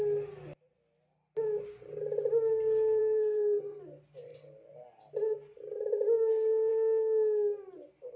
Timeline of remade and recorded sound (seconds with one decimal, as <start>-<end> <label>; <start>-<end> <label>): 0.0-3.0 recorded; 3.0-3.8 remade; 3.8-8.2 recorded